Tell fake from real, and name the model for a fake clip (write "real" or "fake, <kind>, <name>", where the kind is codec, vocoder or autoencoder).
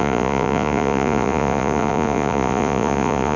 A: fake, vocoder, Vocos